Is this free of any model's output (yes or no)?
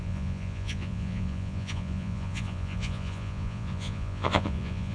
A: no